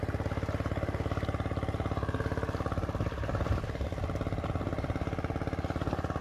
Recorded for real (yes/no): yes